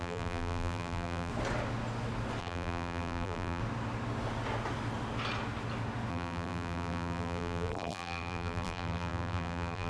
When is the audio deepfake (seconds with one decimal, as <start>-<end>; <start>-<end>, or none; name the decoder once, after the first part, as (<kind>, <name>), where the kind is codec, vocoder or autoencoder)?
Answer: 0.0-1.3 (vocoder, BigVGAN v2); 2.4-3.6; 6.1-9.9